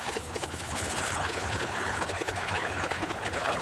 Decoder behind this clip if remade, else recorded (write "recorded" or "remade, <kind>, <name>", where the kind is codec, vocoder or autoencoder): remade, codec, HILCodec